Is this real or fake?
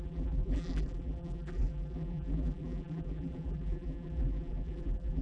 fake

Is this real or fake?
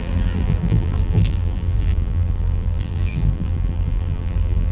fake